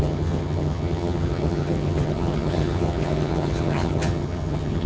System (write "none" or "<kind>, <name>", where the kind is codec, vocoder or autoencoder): vocoder, HiFi-GAN